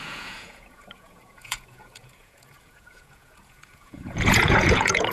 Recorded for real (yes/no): no